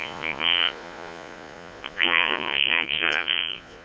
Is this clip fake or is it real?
fake